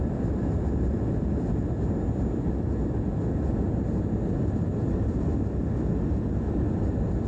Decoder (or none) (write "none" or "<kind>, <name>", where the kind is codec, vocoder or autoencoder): none